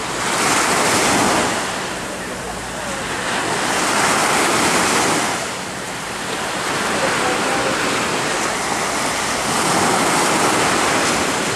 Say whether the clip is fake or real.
real